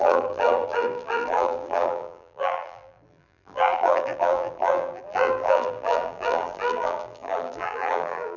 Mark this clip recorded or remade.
remade